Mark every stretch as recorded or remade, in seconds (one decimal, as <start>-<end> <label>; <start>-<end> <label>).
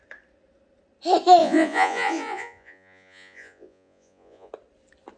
0.0-1.4 recorded; 1.4-4.5 remade; 4.5-5.2 recorded